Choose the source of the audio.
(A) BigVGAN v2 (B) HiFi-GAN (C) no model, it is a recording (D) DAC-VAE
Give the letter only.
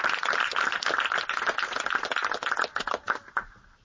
C